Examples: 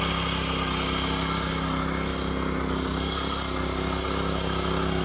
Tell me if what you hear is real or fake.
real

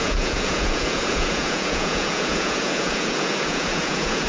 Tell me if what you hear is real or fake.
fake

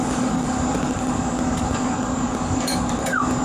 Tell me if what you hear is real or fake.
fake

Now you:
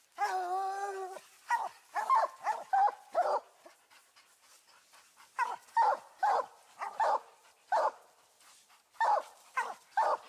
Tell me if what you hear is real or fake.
real